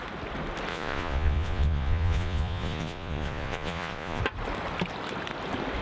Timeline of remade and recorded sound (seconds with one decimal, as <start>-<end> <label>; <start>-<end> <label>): 0.0-0.7 recorded; 0.7-4.2 remade; 4.2-5.8 recorded

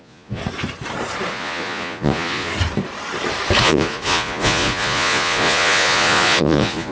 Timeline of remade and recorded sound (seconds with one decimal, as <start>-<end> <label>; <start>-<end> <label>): 0.0-0.4 remade; 0.4-1.3 recorded; 1.3-2.5 remade; 2.5-3.6 recorded; 3.6-6.9 remade

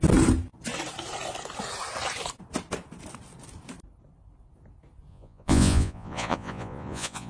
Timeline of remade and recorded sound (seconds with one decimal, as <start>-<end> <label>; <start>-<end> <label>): 0.0-5.1 recorded; 5.1-7.3 remade

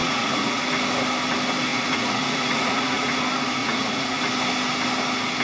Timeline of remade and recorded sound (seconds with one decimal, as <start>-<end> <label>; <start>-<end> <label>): 0.0-0.6 remade; 0.6-1.7 recorded; 1.7-3.2 remade; 3.2-3.6 recorded; 3.6-4.2 remade; 4.2-5.4 recorded

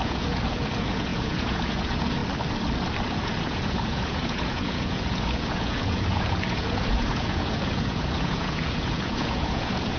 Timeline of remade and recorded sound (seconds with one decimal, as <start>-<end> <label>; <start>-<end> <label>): 0.0-2.2 remade; 2.2-3.1 recorded; 3.1-10.0 remade

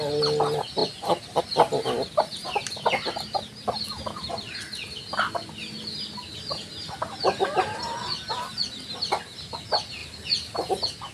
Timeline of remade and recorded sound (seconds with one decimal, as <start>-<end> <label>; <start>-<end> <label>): 0.0-11.1 recorded

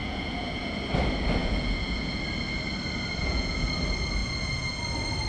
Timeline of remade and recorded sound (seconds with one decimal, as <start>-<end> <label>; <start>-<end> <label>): 0.0-0.8 remade; 0.8-1.4 recorded; 1.4-2.2 remade; 2.2-3.2 recorded; 3.2-3.7 remade; 3.7-4.2 recorded; 4.2-4.8 remade; 4.8-5.3 recorded